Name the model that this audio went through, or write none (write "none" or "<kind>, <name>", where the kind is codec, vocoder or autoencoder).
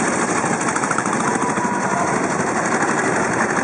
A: vocoder, BigVGAN v2